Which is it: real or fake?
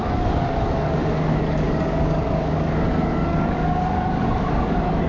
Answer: fake